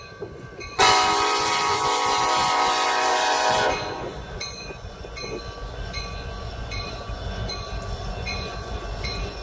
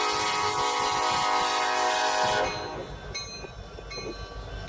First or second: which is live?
second